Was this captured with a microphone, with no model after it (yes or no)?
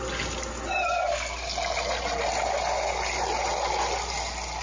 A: yes